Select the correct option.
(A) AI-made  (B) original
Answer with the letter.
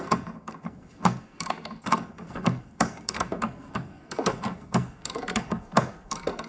A